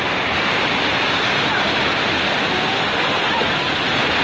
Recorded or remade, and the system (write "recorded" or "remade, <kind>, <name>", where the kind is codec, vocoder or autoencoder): recorded